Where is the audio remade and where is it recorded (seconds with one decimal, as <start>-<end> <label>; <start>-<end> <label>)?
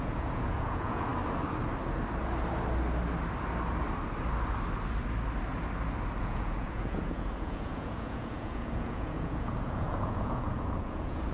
0.0-1.1 remade; 1.1-6.2 recorded; 6.2-11.3 remade